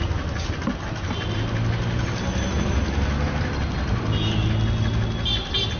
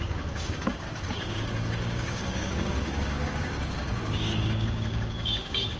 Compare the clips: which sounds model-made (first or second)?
second